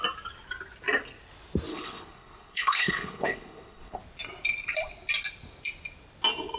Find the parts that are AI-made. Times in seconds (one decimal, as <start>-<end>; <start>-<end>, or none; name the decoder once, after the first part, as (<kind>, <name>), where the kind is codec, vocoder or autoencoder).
1.7-4.0 (codec, HILCodec)